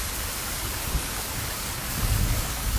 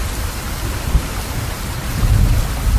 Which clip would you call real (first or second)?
second